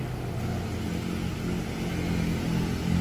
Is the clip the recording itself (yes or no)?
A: yes